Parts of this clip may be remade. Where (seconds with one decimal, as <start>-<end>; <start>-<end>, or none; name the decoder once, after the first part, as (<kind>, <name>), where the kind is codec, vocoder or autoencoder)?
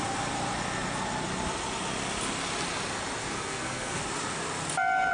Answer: 3.2-4.0 (codec, SNAC)